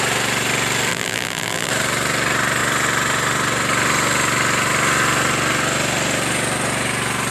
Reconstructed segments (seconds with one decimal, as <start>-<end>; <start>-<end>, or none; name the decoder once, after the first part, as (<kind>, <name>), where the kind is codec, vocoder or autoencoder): 0.9-1.7 (vocoder, BigVGAN v2)